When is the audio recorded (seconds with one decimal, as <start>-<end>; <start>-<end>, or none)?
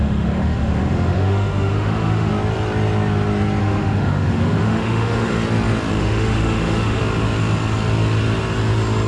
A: 2.3-3.6; 5.3-6.0; 7.0-9.1